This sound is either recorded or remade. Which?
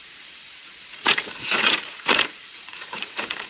remade